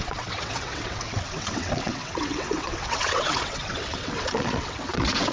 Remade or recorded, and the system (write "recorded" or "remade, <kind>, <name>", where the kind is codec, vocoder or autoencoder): remade, vocoder, WaveNeXt